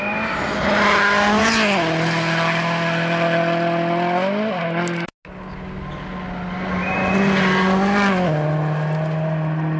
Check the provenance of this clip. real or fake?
real